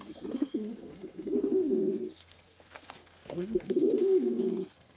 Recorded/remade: remade